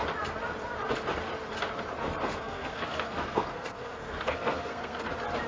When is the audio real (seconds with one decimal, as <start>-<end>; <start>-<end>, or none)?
0.0-2.3; 5.1-5.5

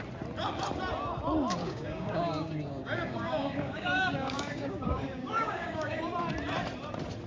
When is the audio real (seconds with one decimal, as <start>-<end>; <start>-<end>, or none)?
0.0-1.6; 6.0-7.3

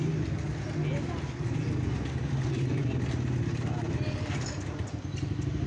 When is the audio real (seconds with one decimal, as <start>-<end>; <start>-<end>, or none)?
0.0-5.7

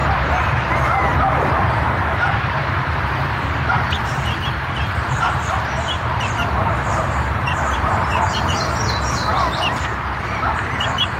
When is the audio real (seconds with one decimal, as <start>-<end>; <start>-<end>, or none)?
8.1-10.2

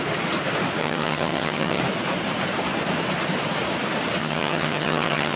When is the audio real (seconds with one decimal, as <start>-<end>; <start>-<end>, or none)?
0.0-0.8; 1.8-4.2

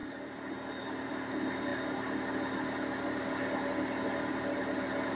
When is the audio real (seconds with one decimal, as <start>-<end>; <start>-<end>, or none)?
1.1-5.1